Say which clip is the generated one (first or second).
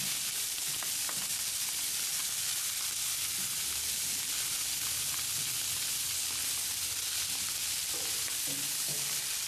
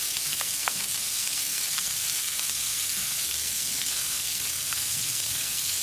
second